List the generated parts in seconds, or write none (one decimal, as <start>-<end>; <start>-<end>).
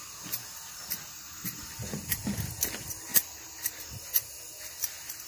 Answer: none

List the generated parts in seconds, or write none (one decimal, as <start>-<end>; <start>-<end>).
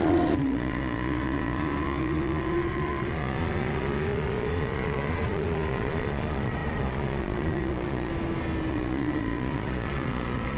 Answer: 0.0-8.1; 8.7-10.6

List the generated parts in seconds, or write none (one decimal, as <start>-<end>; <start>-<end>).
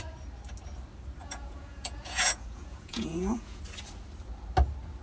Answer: 1.2-3.6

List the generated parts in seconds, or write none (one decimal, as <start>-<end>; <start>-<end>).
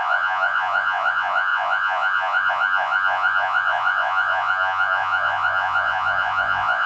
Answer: 0.0-6.9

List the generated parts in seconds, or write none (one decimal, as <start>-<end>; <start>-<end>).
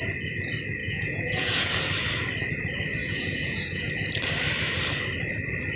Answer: 0.8-1.7; 3.0-3.9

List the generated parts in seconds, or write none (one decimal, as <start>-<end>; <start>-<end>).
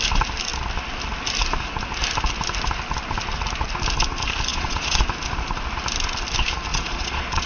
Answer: 4.5-5.0; 6.7-7.5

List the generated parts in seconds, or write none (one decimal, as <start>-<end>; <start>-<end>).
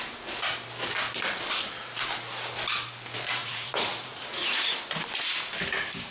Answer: 3.4-4.8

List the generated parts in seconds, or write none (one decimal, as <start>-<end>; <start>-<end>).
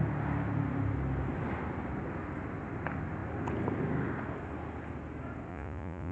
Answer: 5.5-6.1